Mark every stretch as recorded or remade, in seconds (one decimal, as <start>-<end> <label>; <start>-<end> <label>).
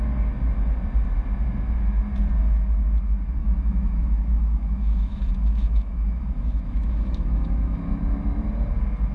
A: 0.0-3.4 recorded; 3.4-8.0 remade; 8.0-9.1 recorded